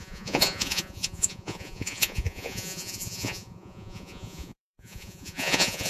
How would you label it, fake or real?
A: fake